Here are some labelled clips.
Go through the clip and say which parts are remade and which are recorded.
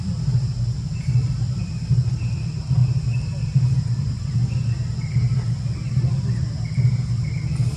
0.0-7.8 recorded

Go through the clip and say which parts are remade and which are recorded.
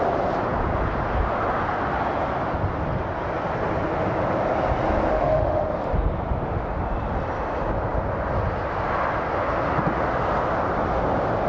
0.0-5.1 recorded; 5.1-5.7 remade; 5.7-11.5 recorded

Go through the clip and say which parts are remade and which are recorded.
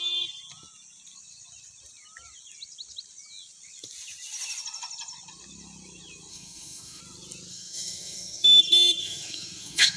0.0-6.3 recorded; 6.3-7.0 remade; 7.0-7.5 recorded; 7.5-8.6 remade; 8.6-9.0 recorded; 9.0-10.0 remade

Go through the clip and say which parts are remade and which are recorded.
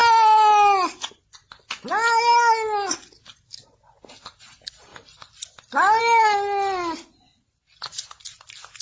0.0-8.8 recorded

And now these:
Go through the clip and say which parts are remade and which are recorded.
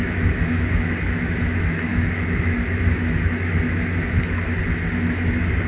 0.0-4.6 remade; 4.6-5.7 recorded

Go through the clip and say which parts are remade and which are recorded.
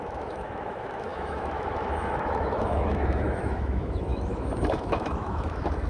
0.0-5.9 remade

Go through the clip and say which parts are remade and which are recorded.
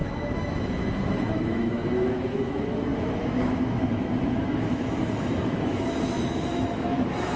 0.0-7.4 remade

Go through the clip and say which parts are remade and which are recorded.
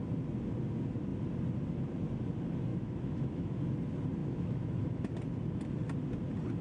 0.0-2.7 recorded; 2.7-3.6 remade; 3.6-4.2 recorded; 4.2-5.0 remade; 5.0-6.6 recorded